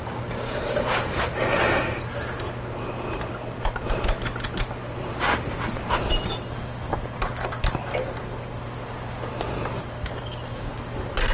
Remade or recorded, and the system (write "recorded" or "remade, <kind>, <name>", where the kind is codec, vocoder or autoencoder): recorded